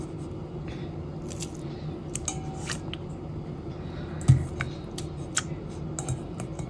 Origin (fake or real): real